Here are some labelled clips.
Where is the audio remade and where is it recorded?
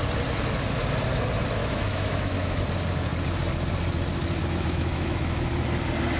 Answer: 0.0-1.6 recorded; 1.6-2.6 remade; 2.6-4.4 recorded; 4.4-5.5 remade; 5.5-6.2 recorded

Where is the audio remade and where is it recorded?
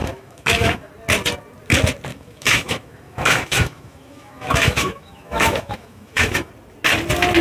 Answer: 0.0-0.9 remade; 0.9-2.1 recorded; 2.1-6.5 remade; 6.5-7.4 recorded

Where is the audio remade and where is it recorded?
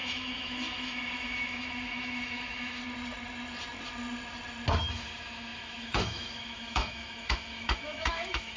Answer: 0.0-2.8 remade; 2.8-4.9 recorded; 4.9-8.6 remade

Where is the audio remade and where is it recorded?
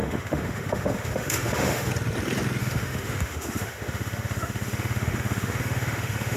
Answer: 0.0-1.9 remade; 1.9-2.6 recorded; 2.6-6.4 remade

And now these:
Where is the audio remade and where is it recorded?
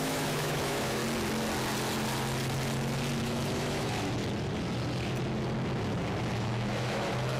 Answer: 0.0-1.0 remade; 1.0-3.2 recorded; 3.2-4.2 remade; 4.2-6.3 recorded; 6.3-7.4 remade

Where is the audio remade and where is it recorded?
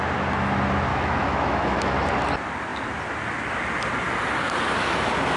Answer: 0.0-0.9 recorded; 0.9-2.0 remade; 2.0-5.4 recorded